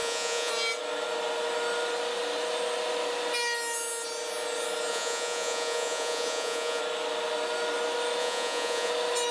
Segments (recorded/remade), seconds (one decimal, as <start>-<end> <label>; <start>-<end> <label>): 0.0-0.5 remade; 0.5-4.9 recorded; 4.9-6.8 remade; 6.8-8.2 recorded; 8.2-8.9 remade; 8.9-9.3 recorded